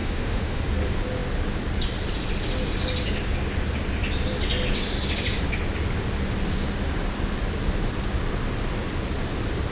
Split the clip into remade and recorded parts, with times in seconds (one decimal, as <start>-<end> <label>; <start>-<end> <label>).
0.0-0.6 remade; 0.6-9.7 recorded